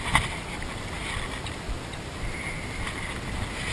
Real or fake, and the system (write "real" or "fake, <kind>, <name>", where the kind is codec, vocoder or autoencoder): real